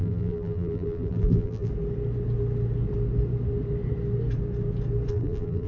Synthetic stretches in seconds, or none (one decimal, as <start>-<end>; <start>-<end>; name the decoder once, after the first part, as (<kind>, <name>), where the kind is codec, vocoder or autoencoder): 0.0-1.7 (vocoder, BigVGAN v2); 5.1-5.7

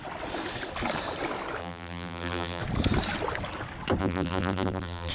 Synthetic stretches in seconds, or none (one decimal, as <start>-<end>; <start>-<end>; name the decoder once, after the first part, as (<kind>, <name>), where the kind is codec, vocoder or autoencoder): 1.6-2.6 (vocoder, BigVGAN v2); 4.0-5.1

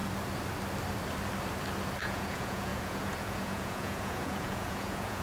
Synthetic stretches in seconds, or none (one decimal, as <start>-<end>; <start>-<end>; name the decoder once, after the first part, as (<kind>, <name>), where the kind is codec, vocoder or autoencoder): 2.0-5.2 (vocoder, Vocos)

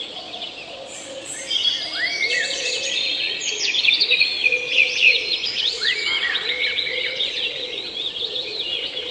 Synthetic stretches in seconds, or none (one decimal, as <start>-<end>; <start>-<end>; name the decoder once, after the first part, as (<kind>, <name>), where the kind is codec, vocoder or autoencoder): 0.0-1.6 (vocoder, Vocos); 2.3-9.1

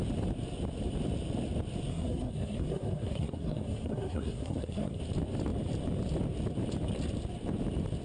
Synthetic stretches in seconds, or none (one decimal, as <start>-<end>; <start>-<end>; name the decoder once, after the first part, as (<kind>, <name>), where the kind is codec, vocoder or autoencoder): 1.9-5.0 (codec, SNAC)

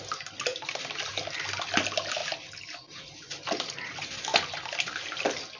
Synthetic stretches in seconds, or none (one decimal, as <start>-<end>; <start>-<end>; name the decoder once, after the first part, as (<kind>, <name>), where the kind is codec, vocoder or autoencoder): none